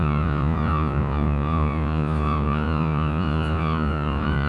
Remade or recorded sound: remade